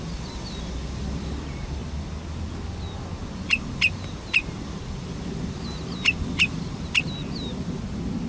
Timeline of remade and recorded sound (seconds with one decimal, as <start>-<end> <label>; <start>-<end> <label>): 0.0-8.3 recorded

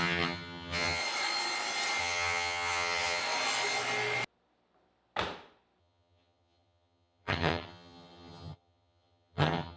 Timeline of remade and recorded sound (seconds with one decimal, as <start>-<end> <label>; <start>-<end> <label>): 0.0-1.0 remade; 1.0-2.0 recorded; 2.0-3.2 remade; 3.2-5.8 recorded; 5.8-9.8 remade

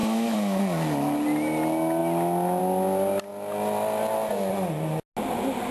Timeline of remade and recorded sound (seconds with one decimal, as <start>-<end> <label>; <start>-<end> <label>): 0.0-0.6 remade; 0.6-5.7 recorded

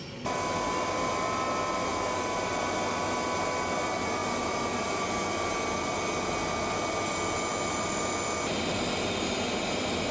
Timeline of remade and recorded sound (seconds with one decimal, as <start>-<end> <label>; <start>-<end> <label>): 0.0-10.1 recorded